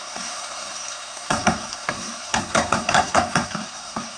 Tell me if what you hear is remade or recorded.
remade